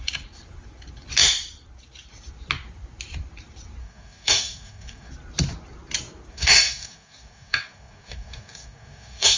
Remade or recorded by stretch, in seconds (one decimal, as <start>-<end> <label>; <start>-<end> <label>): 0.0-3.8 recorded; 3.8-5.1 remade; 5.1-6.3 recorded; 6.3-9.4 remade